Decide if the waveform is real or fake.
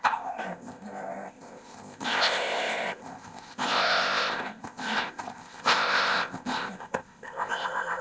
fake